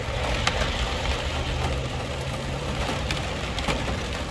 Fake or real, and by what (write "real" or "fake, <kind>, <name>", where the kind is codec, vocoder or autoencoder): fake, vocoder, BigVGAN v2